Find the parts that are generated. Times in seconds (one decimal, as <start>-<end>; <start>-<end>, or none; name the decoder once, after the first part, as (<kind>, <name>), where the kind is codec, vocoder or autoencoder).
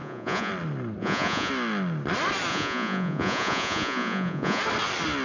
0.0-0.5 (vocoder, Vocos); 1.0-1.5; 2.5-4.6